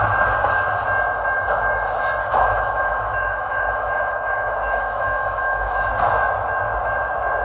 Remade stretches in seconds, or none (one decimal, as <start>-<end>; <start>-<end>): 2.2-5.9